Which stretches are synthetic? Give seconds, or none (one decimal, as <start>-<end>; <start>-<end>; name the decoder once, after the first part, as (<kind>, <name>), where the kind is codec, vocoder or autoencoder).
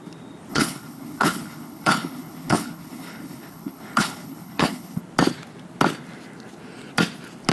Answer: 0.5-5.0 (codec, HILCodec)